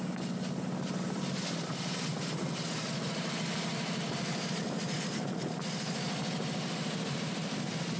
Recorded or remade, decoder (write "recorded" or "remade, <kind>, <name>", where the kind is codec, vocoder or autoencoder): recorded